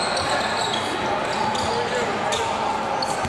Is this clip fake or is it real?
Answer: real